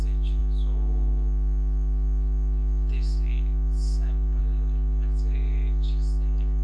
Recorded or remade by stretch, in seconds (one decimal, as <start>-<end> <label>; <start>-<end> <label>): 0.0-6.6 recorded